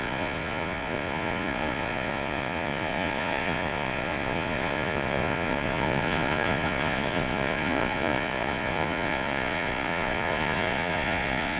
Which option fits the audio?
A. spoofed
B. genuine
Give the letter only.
A